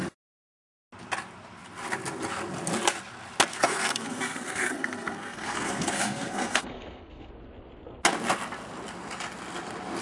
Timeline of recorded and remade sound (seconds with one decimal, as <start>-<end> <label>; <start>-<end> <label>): 0.0-3.5 recorded; 3.5-7.3 remade; 7.3-10.0 recorded